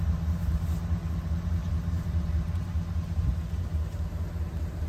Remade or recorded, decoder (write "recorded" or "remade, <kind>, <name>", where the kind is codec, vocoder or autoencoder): remade, vocoder, BigVGAN v2